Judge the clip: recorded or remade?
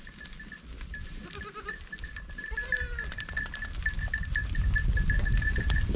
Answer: recorded